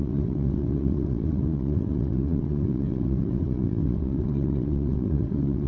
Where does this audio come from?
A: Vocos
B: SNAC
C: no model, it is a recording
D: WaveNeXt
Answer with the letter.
D